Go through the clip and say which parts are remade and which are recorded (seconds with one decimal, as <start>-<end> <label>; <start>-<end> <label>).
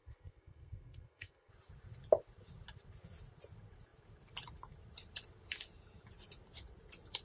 0.0-1.5 remade; 1.5-7.2 recorded